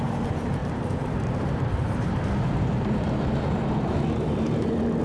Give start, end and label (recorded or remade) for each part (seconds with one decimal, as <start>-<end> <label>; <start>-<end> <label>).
0.0-0.6 recorded; 0.6-1.3 remade; 1.3-1.8 recorded; 1.8-5.0 remade